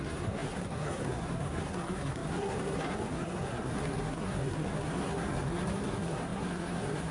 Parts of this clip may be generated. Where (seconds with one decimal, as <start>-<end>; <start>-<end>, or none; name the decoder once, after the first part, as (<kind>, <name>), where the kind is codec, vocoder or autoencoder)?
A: 0.0-7.1 (codec, SNAC)